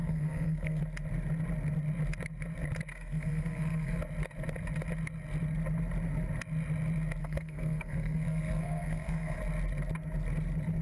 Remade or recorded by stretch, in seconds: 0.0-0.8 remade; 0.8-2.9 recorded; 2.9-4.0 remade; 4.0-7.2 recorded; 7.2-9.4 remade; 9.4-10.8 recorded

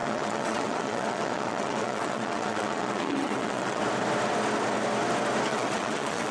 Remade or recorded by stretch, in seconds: 0.0-3.8 remade; 3.8-5.5 recorded; 5.5-6.3 remade

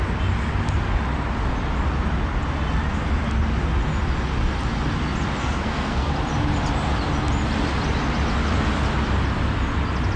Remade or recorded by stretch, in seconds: 0.0-5.4 recorded; 5.4-6.1 remade; 6.1-10.2 recorded

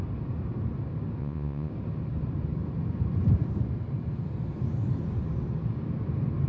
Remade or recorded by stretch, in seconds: 0.0-1.2 recorded; 1.2-1.7 remade; 1.7-6.5 recorded

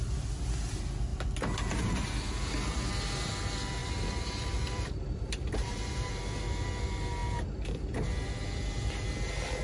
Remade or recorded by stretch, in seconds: 0.0-3.8 recorded; 3.8-6.1 remade; 6.1-9.6 recorded

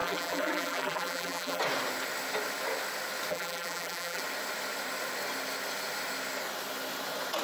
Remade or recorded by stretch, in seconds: 0.0-1.6 remade; 1.6-3.3 recorded; 3.3-4.2 remade; 4.2-7.4 recorded

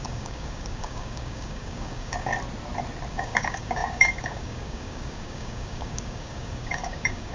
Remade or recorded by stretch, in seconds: 0.0-2.3 remade; 2.3-3.1 recorded; 3.1-7.3 remade